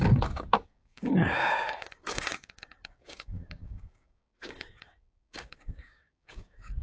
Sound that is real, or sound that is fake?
fake